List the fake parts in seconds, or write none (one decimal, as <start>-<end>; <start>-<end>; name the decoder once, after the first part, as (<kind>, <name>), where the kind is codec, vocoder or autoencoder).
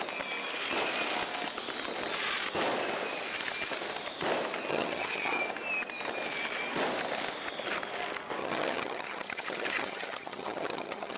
4.7-5.4 (vocoder, HiFi-GAN); 8.4-11.2